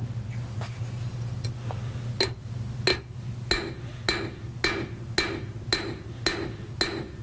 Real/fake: real